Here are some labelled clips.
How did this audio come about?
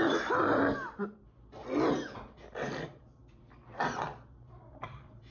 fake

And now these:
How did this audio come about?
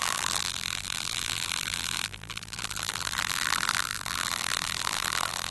fake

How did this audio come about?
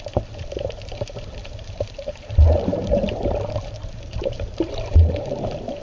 fake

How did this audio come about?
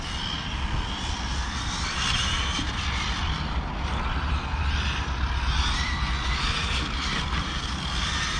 real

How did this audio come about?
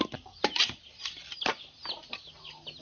real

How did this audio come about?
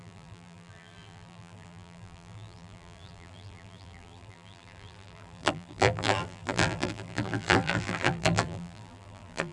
fake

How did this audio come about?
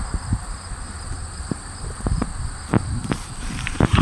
fake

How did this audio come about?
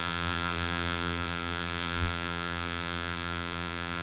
fake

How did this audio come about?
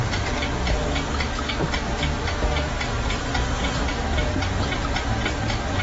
real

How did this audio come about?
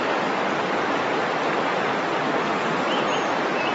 real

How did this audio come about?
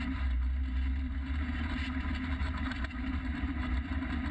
fake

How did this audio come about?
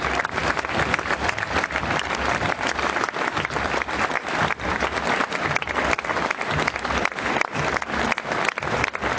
fake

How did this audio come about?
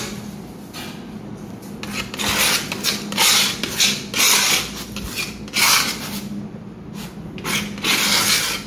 real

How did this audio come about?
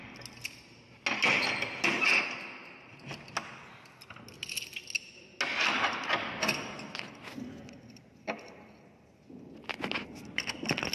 real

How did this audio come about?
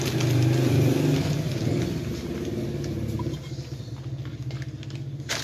real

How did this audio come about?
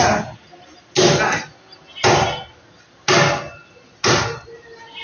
real